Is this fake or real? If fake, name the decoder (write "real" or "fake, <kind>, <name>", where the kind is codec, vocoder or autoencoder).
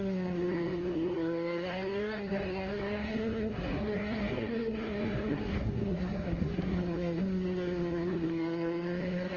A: fake, codec, SNAC